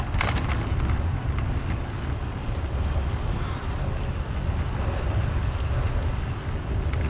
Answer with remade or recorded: recorded